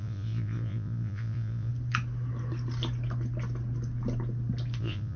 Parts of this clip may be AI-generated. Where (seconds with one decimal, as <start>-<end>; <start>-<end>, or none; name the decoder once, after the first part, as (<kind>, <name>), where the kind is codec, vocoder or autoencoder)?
0.0-1.7 (vocoder, Vocos); 4.8-5.2